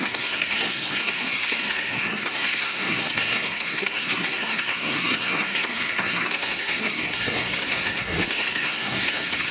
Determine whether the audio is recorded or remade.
remade